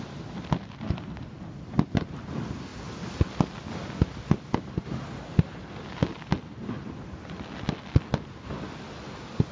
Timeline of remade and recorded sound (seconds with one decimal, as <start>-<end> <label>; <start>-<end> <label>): 0.0-9.5 recorded